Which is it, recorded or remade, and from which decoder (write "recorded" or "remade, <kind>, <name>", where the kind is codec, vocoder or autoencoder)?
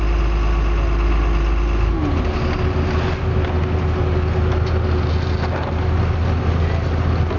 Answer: recorded